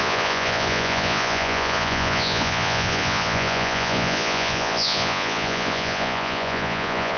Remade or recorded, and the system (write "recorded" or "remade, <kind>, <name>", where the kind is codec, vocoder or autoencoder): remade, vocoder, Vocos